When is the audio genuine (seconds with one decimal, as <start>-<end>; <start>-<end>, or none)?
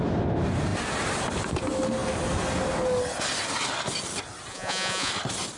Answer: 0.0-4.5; 5.1-5.6